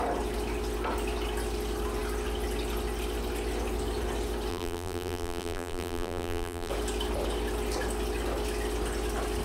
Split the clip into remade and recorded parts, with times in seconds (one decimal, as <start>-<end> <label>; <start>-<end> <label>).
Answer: 0.0-4.5 recorded; 4.5-6.7 remade; 6.7-9.4 recorded